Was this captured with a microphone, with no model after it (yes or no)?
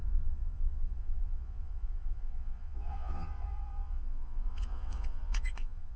no